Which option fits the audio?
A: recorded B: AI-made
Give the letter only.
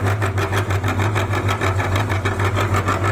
A